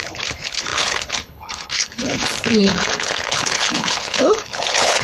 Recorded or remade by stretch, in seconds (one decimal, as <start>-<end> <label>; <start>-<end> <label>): 0.0-5.0 remade